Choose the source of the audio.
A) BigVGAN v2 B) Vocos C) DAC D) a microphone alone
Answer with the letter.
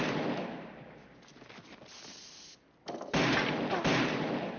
D